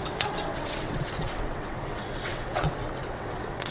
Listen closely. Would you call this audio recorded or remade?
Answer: remade